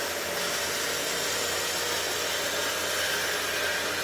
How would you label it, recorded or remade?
recorded